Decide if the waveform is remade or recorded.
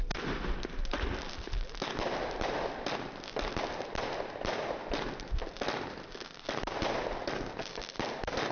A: recorded